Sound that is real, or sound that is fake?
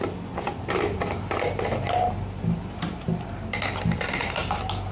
real